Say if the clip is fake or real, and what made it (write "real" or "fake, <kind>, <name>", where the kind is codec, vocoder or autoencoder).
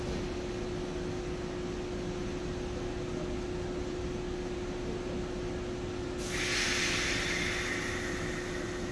real